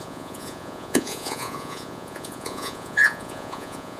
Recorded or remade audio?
remade